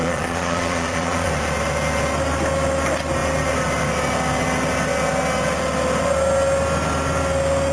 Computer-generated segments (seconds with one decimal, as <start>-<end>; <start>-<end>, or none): 0.0-1.3